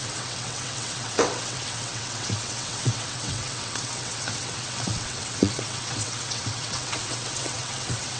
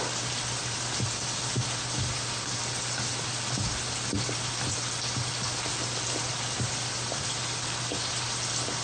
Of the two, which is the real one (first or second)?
second